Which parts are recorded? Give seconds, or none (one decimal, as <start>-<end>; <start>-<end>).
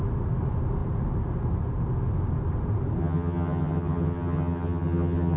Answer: 0.0-3.0